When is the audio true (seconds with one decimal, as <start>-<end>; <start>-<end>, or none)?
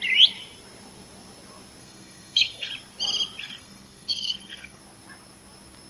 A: 0.0-1.8; 2.7-3.4; 4.8-5.9